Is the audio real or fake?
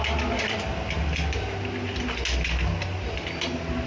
real